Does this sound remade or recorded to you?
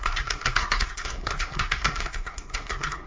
remade